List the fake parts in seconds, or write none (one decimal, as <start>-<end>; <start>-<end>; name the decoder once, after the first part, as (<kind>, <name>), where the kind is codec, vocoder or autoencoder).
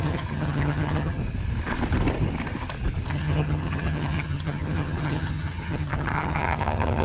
0.0-1.2 (vocoder, HiFi-GAN); 3.1-7.0